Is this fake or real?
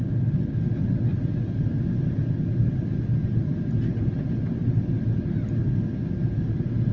real